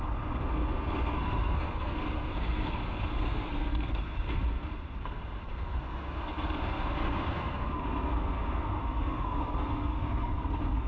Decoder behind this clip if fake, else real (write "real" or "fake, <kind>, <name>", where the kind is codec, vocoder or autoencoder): fake, codec, SNAC